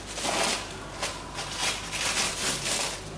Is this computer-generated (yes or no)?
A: no